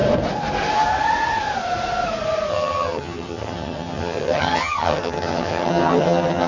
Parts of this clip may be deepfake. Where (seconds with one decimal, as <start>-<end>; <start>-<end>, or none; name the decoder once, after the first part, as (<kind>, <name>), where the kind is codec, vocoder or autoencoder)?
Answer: 2.5-6.5 (vocoder, HiFi-GAN)

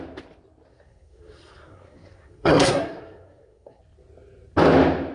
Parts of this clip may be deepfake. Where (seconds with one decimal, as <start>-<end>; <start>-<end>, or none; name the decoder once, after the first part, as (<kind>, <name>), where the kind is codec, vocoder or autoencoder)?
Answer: 0.7-3.8 (codec, SNAC)

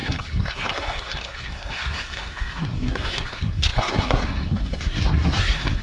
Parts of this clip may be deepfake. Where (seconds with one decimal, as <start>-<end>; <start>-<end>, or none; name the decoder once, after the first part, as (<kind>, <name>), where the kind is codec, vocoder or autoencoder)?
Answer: 0.0-5.8 (codec, SNAC)

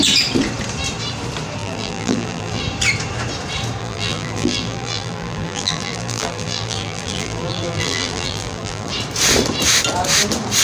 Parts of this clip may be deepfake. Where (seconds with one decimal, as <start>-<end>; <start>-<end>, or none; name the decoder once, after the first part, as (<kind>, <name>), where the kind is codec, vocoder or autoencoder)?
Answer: 1.6-2.6 (vocoder, BigVGAN v2); 3.8-8.9

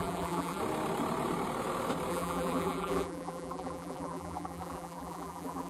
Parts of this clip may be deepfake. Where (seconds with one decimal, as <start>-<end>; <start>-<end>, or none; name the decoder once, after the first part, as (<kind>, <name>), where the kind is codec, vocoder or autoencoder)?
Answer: 0.0-0.6 (vocoder, BigVGAN v2); 2.1-5.7

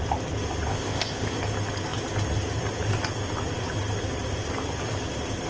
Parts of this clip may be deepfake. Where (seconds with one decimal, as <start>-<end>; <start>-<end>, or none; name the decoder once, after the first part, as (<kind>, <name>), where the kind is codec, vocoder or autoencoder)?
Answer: 0.7-1.4 (codec, ZipCodec)

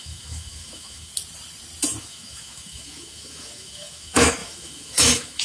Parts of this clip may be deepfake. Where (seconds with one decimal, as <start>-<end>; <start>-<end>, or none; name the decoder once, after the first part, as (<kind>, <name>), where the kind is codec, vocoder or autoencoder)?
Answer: 0.0-1.1 (autoencoder, DAC-VAE); 2.0-5.4

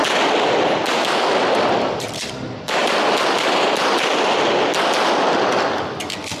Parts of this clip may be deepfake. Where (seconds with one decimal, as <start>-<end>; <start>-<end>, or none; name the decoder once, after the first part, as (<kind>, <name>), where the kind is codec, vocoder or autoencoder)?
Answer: 0.8-1.4 (vocoder, BigVGAN v2); 2.0-2.8; 5.3-6.4